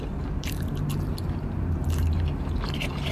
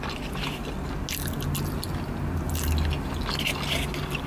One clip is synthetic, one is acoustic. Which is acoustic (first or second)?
second